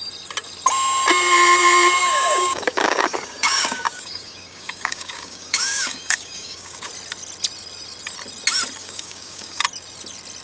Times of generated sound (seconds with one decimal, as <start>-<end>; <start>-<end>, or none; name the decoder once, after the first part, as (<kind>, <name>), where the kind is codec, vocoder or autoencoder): 2.0-6.9 (codec, DAC); 8.8-9.6